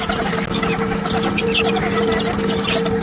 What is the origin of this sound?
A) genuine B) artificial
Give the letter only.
A